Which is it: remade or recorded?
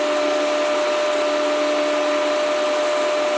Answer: recorded